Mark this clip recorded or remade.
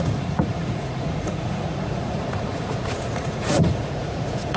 remade